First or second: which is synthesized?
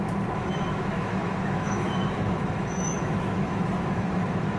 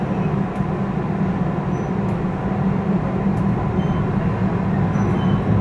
first